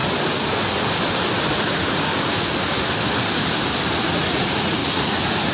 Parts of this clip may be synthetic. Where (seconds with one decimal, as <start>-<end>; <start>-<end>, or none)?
1.5-2.1; 4.0-5.5

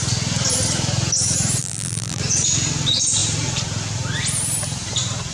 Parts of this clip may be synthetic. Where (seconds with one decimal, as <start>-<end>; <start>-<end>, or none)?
1.6-2.2

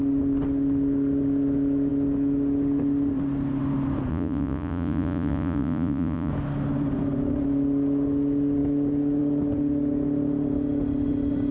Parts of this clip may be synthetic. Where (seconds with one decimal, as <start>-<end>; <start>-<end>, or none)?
4.1-6.3

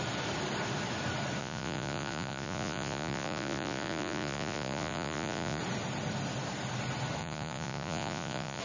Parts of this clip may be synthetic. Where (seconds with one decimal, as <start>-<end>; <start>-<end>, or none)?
1.4-5.6; 7.2-8.6

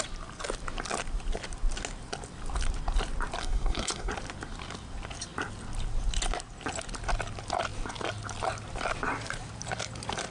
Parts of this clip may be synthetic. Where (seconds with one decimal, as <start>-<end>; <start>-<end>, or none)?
3.4-4.1

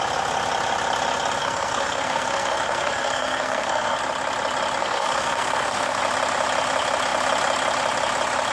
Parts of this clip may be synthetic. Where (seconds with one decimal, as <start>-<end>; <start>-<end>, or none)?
1.4-4.0; 4.8-6.0

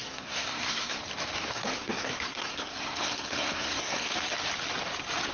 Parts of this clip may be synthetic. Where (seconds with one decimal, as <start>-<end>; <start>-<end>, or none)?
0.0-1.0; 1.5-4.1

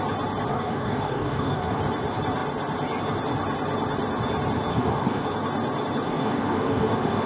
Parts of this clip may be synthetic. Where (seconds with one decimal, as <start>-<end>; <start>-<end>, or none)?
0.5-1.8; 4.7-5.2; 6.1-7.3